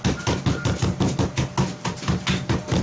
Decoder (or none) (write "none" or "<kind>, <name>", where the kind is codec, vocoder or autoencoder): none